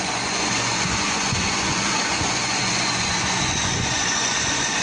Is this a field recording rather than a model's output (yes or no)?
no